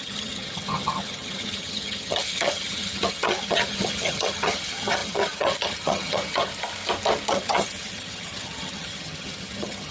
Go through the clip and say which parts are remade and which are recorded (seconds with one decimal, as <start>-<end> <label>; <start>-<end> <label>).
0.0-6.5 remade; 6.5-7.3 recorded; 7.3-9.9 remade